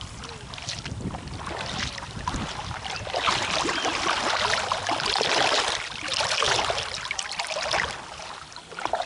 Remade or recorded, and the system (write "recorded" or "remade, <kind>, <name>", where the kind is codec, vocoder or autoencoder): recorded